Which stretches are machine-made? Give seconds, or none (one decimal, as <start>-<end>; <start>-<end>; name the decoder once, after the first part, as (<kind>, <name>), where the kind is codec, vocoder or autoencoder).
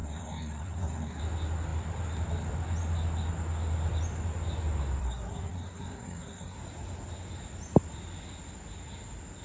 0.0-1.2 (codec, SNAC); 5.0-6.6